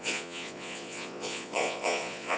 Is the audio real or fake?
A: fake